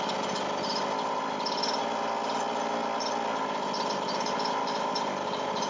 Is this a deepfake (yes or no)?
no